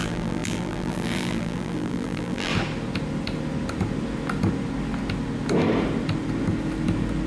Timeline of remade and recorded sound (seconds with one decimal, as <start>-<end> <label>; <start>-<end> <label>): 0.0-2.5 remade; 2.5-7.3 recorded